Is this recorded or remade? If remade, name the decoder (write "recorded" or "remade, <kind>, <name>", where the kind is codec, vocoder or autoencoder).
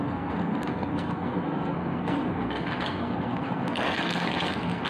remade, codec, SNAC